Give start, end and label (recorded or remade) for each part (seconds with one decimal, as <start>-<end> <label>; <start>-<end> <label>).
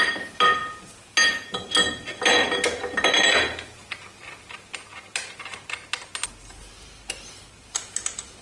0.0-8.4 recorded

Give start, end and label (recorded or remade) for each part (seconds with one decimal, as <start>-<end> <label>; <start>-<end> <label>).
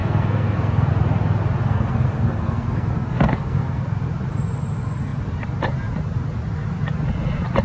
0.0-0.9 remade; 0.9-1.6 recorded; 1.6-3.8 remade; 3.8-7.6 recorded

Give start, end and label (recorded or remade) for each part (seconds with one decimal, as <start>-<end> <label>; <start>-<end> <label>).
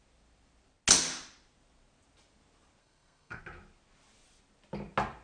0.0-2.8 recorded; 2.8-3.4 remade; 3.4-5.2 recorded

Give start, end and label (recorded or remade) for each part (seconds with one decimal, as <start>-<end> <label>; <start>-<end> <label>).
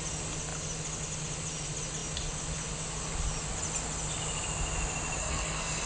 0.0-5.2 recorded; 5.2-5.9 remade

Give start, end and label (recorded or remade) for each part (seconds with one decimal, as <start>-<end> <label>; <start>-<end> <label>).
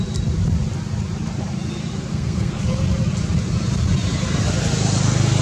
0.0-2.1 recorded; 2.1-2.6 remade; 2.6-5.4 recorded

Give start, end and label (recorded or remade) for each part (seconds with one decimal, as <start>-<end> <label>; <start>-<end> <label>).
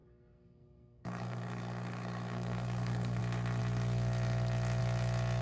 0.0-3.2 remade; 3.2-5.4 recorded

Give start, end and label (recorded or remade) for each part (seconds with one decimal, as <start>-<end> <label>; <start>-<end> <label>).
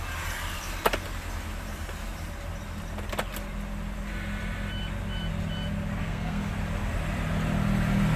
0.0-6.0 recorded; 6.0-6.5 remade; 6.5-8.2 recorded